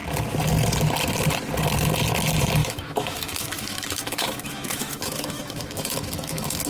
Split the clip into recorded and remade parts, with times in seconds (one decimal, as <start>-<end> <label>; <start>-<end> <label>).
0.0-2.6 recorded; 2.6-6.7 remade